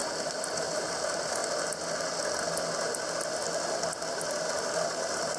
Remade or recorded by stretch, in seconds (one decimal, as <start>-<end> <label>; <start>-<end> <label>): 0.0-0.7 recorded; 0.7-1.4 remade; 1.4-4.6 recorded; 4.6-5.4 remade